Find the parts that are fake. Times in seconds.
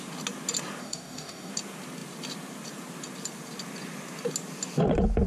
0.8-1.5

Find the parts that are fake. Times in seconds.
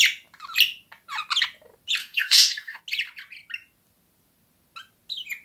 2.0-2.8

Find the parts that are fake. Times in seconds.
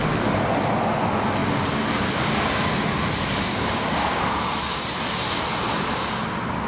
3.5-4.2